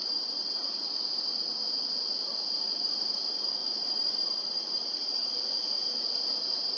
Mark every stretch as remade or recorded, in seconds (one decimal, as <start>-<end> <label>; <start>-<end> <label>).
0.0-1.2 remade; 1.2-3.6 recorded; 3.6-5.3 remade; 5.3-6.8 recorded